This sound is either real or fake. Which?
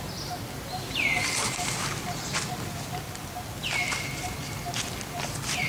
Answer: fake